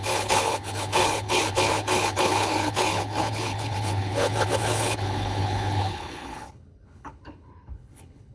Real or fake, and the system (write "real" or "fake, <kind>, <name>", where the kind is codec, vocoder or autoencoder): fake, codec, HILCodec